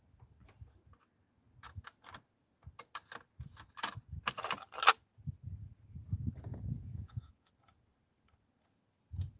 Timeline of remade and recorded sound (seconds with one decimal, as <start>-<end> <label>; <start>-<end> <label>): 0.0-6.5 recorded; 6.5-7.5 remade; 7.5-9.4 recorded